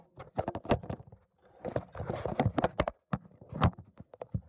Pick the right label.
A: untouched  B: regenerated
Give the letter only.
A